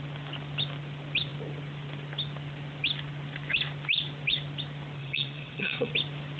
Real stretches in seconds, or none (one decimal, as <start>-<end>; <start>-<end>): 0.0-5.0; 5.9-6.4